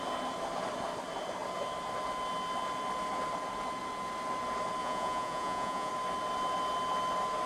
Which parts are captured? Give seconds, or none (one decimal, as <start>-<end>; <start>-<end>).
0.0-4.8; 5.9-7.5